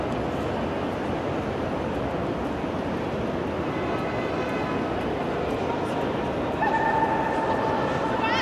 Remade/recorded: recorded